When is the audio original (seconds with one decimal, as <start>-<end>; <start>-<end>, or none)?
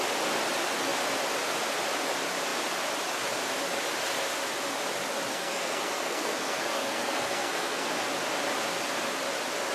0.0-5.3; 7.9-9.7